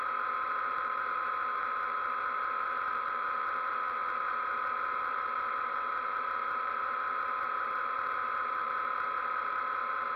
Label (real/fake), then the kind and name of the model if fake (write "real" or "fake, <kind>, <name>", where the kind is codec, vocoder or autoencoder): fake, vocoder, BigVGAN v2